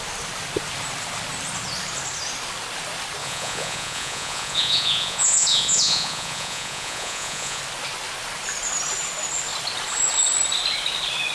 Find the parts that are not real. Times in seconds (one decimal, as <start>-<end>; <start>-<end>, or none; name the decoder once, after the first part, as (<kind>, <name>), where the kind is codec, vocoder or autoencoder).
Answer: 3.2-7.6 (vocoder, Vocos)